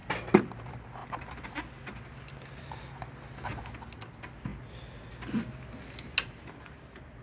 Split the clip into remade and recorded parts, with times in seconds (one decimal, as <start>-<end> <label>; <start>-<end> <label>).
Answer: 0.0-7.2 recorded